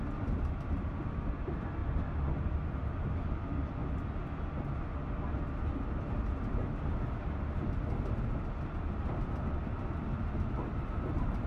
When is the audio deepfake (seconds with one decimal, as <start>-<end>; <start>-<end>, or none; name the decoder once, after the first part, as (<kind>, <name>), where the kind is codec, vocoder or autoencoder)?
0.0-3.8 (vocoder, BigVGAN v2); 8.3-11.5